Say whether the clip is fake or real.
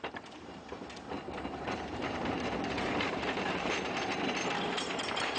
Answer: fake